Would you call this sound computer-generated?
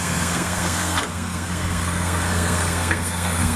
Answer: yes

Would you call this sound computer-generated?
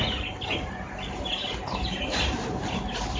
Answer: no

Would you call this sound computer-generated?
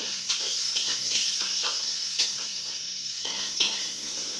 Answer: yes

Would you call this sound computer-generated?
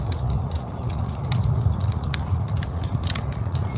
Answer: yes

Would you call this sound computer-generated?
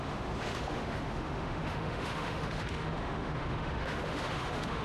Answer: yes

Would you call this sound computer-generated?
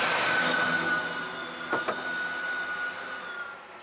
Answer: no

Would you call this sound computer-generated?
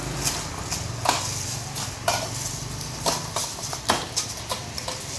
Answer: no